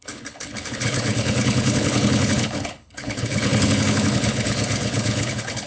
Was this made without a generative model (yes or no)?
no